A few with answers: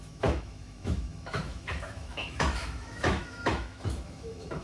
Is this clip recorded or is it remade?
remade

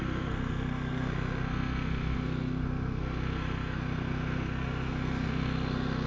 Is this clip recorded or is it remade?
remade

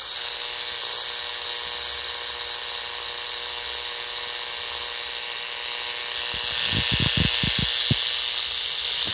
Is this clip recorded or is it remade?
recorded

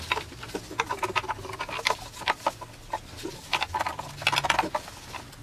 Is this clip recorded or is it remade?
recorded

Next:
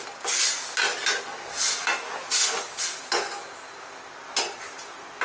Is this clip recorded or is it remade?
recorded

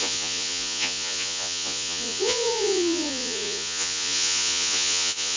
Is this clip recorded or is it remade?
remade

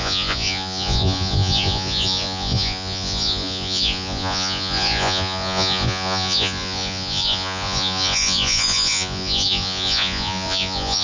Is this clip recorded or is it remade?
remade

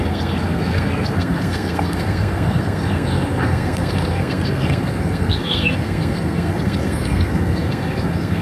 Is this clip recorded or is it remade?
remade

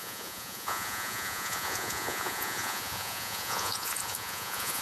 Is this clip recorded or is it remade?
remade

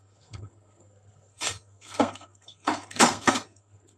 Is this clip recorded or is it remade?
remade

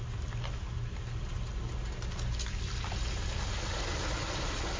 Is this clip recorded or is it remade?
recorded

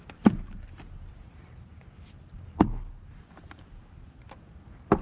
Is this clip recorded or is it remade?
recorded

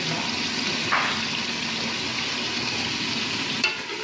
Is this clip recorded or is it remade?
recorded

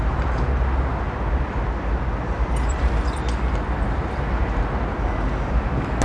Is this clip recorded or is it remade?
recorded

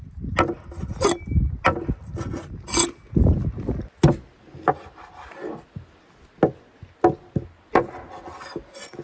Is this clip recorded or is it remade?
recorded